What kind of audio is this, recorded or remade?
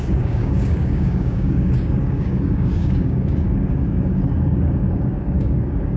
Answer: remade